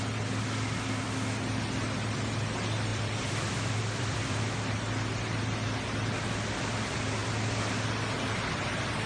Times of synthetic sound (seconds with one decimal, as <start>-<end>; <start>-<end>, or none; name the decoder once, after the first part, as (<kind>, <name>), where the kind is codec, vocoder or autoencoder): 2.9-4.4 (vocoder, BigVGAN v2)